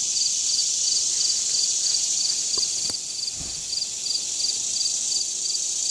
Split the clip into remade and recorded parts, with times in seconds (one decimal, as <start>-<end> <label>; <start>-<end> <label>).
0.0-5.9 recorded